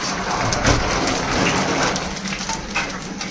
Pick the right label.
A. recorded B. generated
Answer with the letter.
A